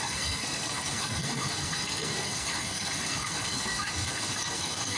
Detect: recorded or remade remade